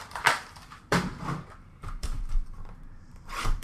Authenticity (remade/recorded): remade